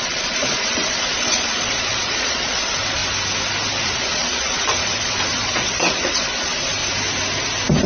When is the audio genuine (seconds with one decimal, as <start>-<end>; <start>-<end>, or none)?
3.0-3.8; 6.8-7.9